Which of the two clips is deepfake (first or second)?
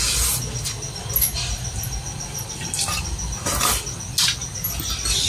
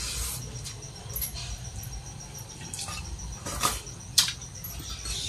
second